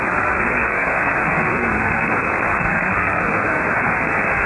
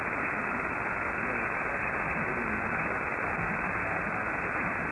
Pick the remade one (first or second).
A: first